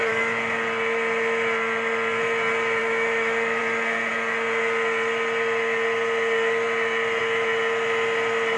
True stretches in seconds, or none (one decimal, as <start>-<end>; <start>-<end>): 0.0-2.8; 3.6-8.6